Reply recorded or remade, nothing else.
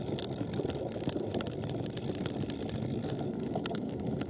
recorded